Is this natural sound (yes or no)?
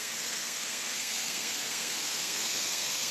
no